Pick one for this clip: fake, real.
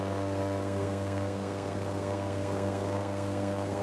fake